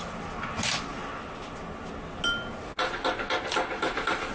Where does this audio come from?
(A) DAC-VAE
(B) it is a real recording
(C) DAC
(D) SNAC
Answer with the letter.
B